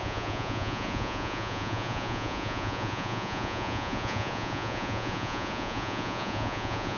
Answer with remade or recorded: remade